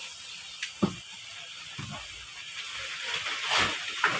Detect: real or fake real